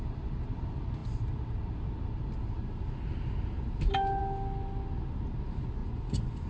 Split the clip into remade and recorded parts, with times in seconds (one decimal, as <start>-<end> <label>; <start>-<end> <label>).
0.0-5.8 recorded; 5.8-6.5 remade